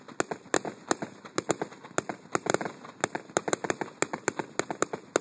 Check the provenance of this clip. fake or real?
real